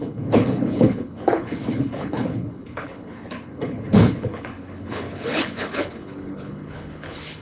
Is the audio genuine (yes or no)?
no